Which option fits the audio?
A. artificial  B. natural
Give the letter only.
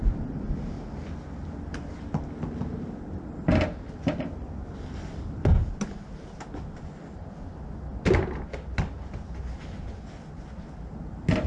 B